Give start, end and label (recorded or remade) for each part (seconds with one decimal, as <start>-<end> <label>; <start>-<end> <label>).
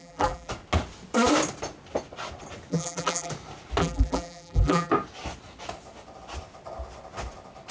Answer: 0.0-0.5 remade; 0.5-2.7 recorded; 2.7-3.3 remade; 3.3-3.8 recorded; 3.8-4.9 remade; 4.9-7.7 recorded